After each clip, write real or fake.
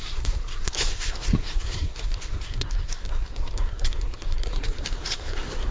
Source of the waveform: fake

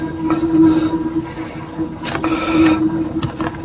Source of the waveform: real